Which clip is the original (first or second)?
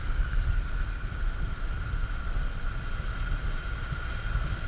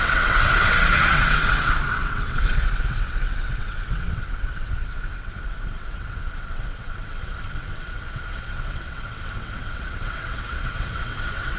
first